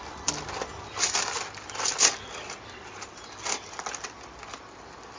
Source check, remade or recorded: recorded